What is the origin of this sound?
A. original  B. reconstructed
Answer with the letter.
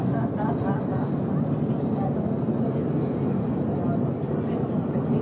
A